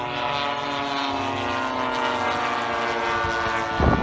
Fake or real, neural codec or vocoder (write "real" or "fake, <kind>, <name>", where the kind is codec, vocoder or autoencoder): real